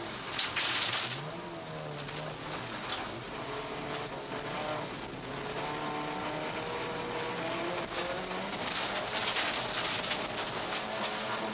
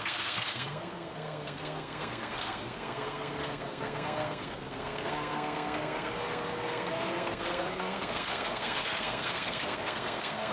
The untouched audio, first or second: first